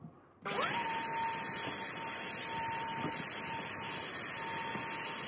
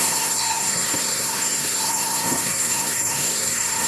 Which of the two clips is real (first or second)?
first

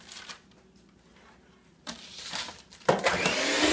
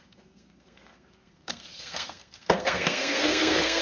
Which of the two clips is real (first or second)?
first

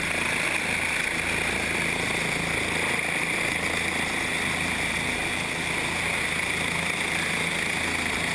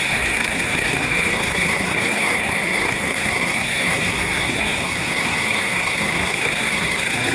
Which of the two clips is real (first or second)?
first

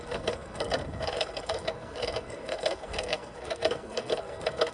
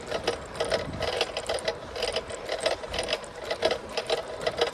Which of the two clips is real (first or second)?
second